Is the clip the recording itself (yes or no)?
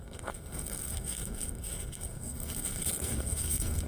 no